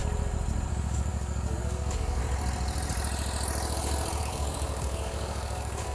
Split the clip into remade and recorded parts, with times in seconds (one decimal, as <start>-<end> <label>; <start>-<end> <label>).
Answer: 0.0-0.7 recorded; 0.7-2.2 remade; 2.2-4.2 recorded; 4.2-5.9 remade